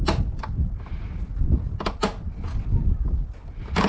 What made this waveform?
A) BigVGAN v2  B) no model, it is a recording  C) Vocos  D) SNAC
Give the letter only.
B